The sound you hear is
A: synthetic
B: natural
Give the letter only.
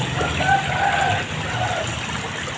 B